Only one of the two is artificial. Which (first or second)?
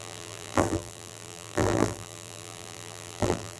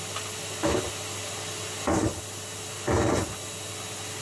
first